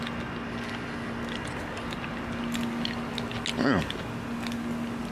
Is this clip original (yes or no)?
yes